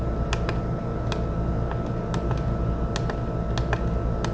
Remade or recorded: recorded